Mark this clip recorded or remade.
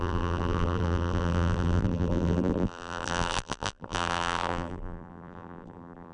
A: remade